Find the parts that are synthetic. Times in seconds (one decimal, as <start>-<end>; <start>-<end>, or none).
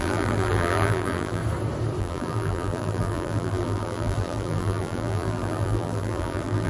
0.0-1.4; 2.0-6.7